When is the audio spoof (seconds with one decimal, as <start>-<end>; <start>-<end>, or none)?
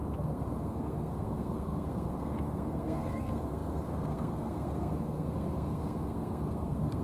0.0-7.0